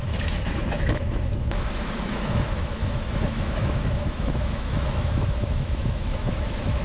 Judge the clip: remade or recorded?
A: remade